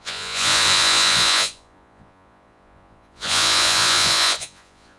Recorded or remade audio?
remade